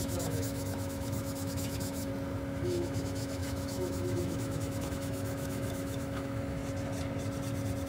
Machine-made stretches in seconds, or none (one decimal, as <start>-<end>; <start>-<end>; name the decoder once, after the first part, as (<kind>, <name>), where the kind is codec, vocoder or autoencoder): 0.0-2.1 (autoencoder, DAC-VAE); 2.6-6.6